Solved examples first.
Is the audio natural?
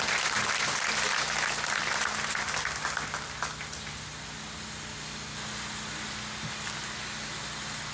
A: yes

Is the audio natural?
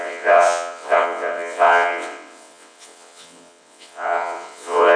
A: no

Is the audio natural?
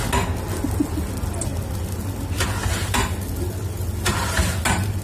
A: yes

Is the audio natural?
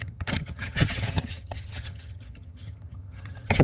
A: no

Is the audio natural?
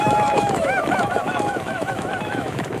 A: no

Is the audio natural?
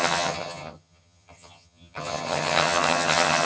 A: no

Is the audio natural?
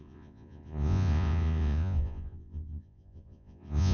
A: no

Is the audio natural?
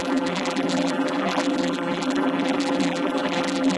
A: no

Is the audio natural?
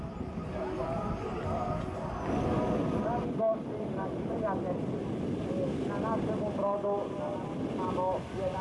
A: yes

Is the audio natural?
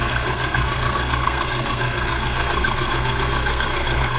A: no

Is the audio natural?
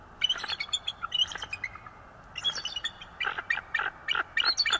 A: yes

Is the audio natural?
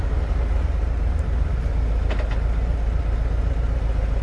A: yes